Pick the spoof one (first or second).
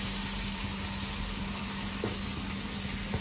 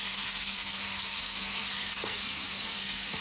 second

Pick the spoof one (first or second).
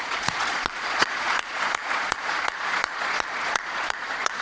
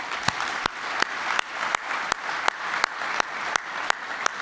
first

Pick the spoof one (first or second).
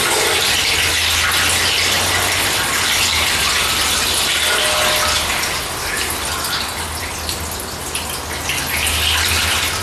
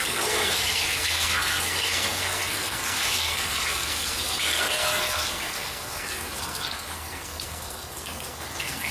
second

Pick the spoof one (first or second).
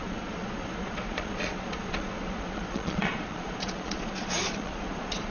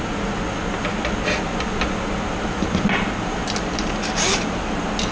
first